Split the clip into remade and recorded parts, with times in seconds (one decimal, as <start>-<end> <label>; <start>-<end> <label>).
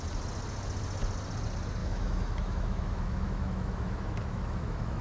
0.0-1.8 recorded; 1.8-5.0 remade